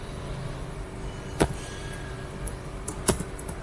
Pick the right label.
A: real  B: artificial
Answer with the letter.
B